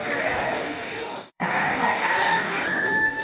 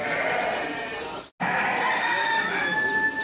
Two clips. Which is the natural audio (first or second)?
second